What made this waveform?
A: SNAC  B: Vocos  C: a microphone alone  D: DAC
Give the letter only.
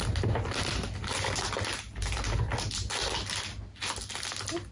C